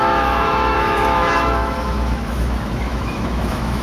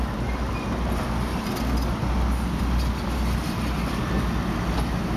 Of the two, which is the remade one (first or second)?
first